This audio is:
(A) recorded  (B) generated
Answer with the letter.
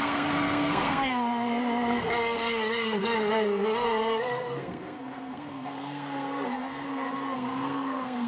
B